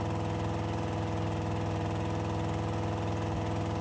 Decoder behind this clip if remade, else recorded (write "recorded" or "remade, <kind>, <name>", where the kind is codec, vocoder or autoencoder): recorded